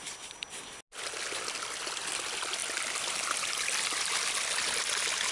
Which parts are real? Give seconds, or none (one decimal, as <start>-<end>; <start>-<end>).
0.0-2.6; 4.0-5.3